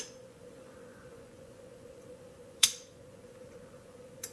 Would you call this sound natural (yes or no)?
no